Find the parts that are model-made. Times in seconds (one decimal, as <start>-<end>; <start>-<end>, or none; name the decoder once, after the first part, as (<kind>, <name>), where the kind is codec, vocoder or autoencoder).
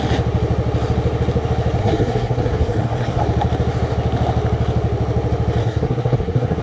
1.8-3.2 (codec, SNAC); 5.6-6.6